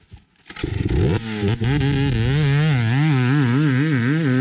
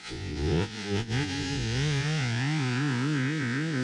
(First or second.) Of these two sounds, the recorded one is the first